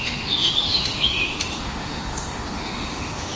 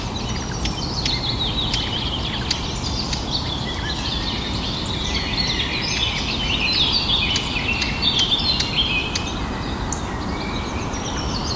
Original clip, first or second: second